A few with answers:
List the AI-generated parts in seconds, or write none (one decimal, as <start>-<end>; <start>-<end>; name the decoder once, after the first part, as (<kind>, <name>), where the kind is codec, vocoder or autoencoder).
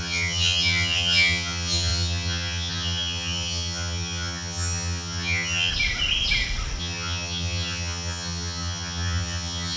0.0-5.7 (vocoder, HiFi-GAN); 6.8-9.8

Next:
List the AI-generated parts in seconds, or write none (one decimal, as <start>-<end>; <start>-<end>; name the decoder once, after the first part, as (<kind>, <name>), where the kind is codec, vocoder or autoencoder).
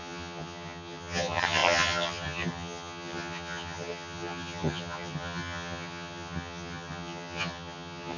0.0-8.2 (vocoder, HiFi-GAN)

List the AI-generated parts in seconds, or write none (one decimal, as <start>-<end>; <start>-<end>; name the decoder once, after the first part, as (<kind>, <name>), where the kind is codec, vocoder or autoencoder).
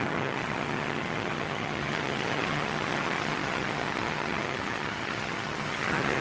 0.0-6.2 (vocoder, HiFi-GAN)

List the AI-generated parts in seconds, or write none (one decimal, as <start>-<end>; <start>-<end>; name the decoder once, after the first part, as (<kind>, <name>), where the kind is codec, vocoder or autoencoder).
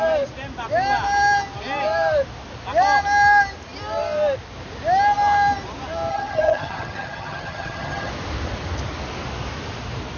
6.1-8.1 (vocoder, HiFi-GAN)